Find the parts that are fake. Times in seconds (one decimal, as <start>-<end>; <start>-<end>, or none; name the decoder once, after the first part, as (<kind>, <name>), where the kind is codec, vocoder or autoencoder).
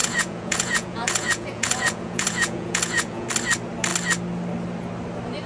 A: 0.0-3.3 (vocoder, Vocos)